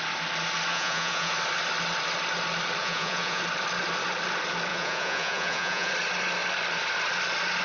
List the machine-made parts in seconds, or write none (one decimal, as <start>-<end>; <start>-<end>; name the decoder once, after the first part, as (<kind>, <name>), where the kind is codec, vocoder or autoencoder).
0.7-1.3 (vocoder, Vocos); 2.8-3.4; 4.7-5.9